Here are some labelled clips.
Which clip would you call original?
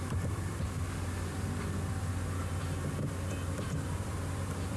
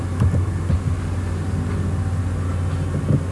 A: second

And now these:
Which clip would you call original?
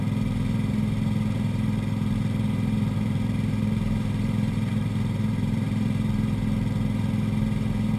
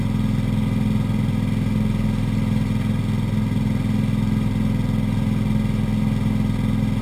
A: second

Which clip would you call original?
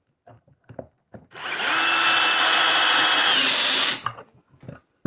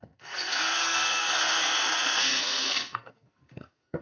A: first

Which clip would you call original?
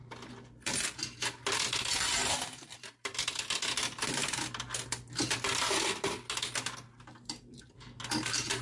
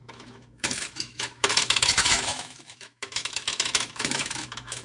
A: first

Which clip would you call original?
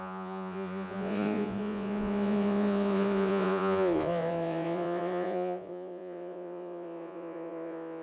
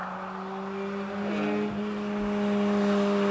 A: second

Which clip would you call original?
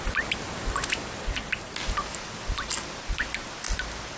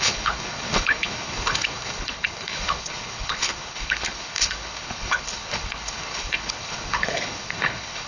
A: first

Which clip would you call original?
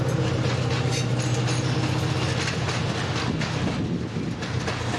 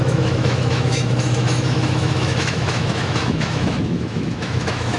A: first